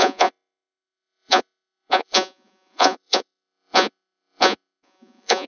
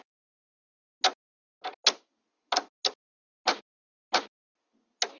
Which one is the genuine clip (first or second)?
second